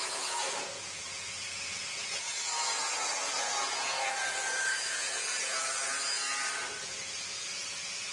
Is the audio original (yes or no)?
no